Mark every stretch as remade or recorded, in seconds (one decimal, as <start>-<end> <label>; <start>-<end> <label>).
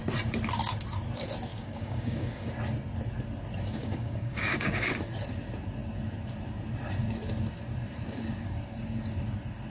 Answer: 0.0-1.5 recorded; 1.5-2.5 remade; 2.5-3.8 recorded; 3.8-4.9 remade; 4.9-9.7 recorded